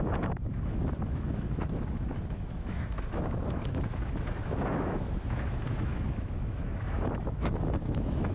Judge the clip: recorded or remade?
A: remade